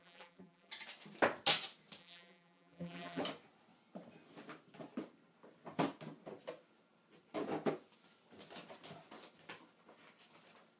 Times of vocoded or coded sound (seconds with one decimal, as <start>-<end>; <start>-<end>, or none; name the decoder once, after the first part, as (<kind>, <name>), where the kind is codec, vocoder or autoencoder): 0.0-0.7 (vocoder, BigVGAN v2); 2.0-3.2